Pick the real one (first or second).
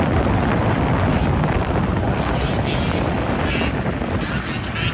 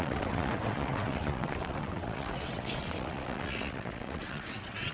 first